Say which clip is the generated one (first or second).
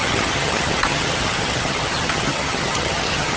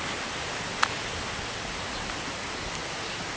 first